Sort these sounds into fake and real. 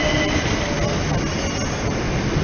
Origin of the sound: real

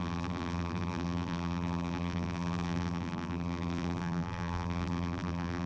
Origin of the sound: fake